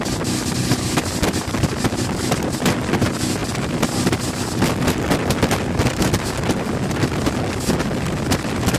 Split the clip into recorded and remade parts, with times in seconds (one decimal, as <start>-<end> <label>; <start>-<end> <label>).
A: 0.0-8.8 recorded